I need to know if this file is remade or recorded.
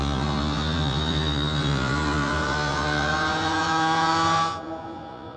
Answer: remade